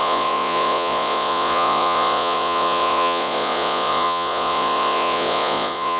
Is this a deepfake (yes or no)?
yes